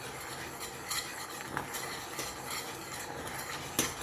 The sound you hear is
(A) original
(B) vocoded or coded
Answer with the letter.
A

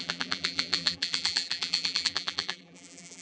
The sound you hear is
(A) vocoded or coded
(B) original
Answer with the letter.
A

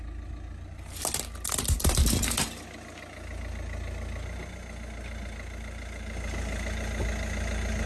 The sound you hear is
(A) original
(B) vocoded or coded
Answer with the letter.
A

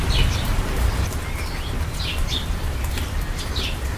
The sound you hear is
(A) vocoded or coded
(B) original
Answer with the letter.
B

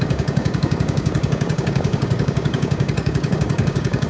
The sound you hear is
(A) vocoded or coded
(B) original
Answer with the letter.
A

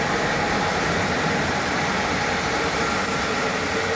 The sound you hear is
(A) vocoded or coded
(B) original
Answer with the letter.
A